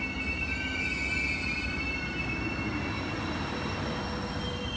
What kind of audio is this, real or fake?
real